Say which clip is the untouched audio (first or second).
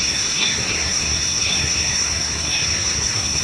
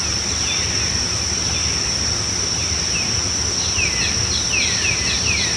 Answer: second